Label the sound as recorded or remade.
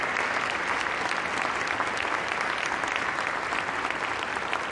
recorded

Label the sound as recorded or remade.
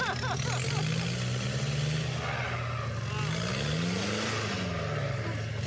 recorded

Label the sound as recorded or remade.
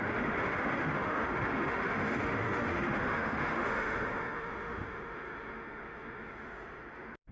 remade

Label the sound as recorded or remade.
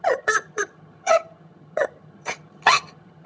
remade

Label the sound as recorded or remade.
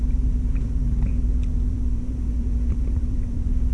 remade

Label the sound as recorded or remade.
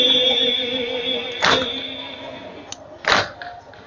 recorded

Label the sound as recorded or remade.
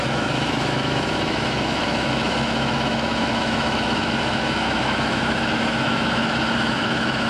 remade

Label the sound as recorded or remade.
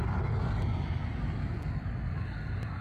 recorded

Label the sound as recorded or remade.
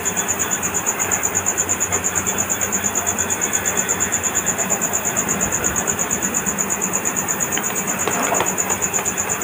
recorded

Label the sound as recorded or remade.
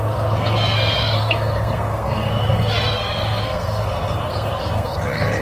remade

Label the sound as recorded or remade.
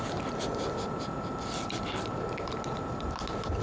recorded